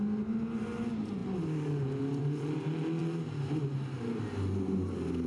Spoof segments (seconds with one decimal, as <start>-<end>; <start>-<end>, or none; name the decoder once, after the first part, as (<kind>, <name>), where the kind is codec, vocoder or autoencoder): none